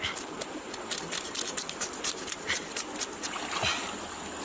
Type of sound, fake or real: real